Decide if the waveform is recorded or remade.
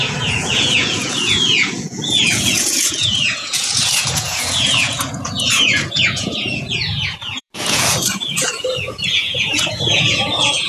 remade